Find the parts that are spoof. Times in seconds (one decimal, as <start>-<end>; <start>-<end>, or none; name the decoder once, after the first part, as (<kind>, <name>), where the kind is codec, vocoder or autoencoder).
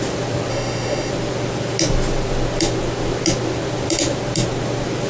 0.5-1.1 (autoencoder, DAC-VAE)